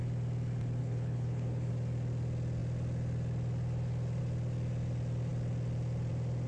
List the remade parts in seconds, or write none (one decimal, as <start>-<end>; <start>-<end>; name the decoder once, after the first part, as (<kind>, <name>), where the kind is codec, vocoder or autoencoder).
0.8-1.7 (codec, HILCodec)